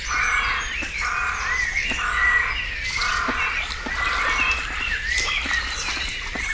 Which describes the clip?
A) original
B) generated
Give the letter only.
A